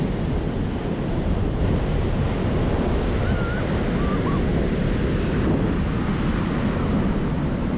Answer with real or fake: real